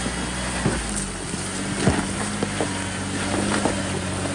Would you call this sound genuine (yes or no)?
yes